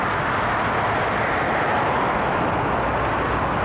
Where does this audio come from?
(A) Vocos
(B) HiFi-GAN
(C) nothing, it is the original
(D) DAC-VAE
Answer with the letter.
C